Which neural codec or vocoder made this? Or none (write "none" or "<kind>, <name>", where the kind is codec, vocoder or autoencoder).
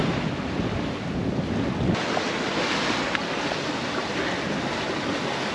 none